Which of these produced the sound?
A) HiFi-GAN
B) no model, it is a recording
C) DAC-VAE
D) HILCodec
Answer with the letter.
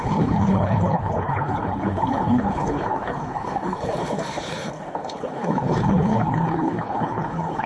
D